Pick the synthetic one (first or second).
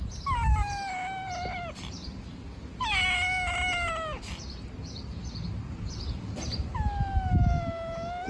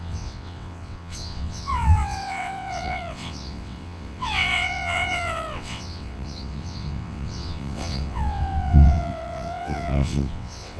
second